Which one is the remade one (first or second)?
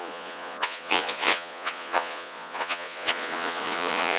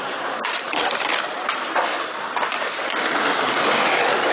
first